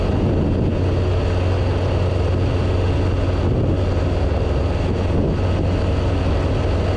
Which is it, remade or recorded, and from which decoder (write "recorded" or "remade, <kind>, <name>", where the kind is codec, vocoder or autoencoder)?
recorded